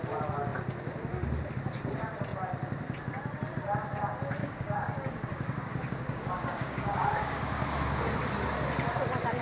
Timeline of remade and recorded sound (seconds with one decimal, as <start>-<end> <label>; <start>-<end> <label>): 0.0-4.4 recorded; 4.4-8.0 remade; 8.0-9.4 recorded